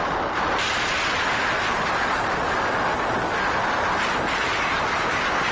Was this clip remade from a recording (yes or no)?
no